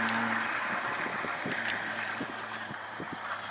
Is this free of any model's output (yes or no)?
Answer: yes